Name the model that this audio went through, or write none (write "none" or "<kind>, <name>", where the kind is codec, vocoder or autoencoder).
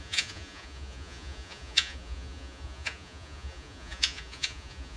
vocoder, Vocos